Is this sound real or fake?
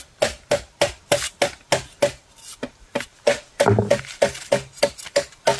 real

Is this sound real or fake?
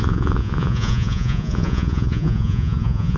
fake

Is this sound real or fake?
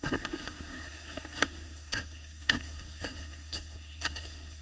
fake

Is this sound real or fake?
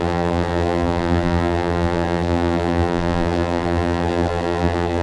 fake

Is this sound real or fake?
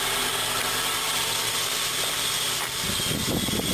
real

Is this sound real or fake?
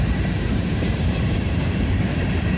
fake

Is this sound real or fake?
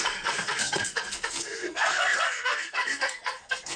fake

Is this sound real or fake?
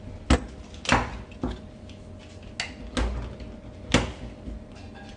real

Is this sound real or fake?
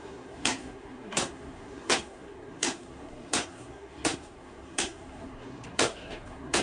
fake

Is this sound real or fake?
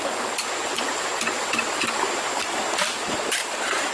real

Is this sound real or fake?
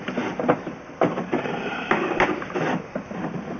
real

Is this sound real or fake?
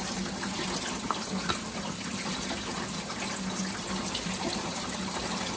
real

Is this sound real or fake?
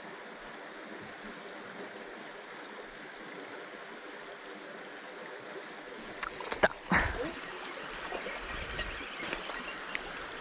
real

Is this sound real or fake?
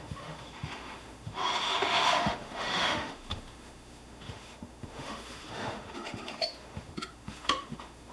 fake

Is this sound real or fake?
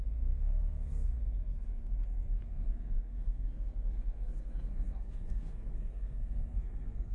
fake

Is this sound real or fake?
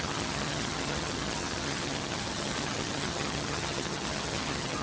fake